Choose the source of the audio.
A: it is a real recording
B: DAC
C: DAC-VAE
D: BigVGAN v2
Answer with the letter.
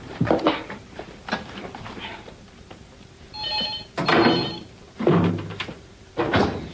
D